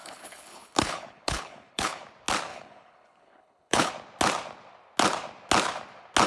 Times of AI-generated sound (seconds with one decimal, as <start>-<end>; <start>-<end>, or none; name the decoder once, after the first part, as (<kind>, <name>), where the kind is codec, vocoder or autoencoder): 0.0-2.0 (codec, HILCodec); 2.5-3.9